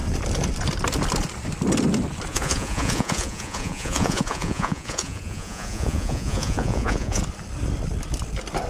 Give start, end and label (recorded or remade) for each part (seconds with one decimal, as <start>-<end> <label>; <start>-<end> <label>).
0.0-2.3 recorded; 2.3-7.2 remade; 7.2-8.7 recorded